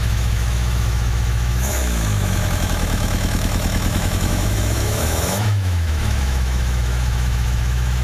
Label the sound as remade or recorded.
remade